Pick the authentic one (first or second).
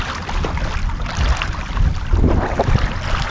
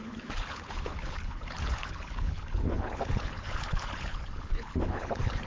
first